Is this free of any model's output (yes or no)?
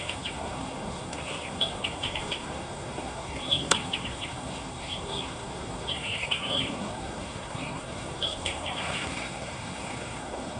no